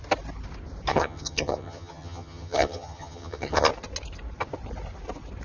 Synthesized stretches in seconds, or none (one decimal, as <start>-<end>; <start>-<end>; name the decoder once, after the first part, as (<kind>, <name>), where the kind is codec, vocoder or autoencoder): 0.9-3.7 (vocoder, HiFi-GAN)